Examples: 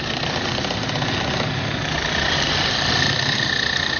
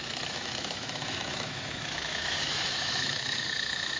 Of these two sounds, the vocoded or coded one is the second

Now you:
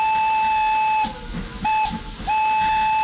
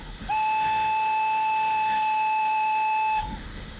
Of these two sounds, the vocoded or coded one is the second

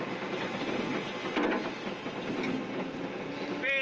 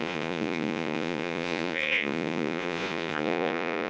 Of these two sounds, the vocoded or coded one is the second